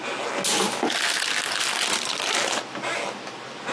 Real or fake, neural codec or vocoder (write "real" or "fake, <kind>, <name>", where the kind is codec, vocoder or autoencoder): real